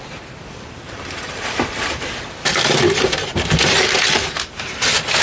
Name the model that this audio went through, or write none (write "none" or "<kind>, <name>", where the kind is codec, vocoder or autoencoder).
vocoder, BigVGAN v2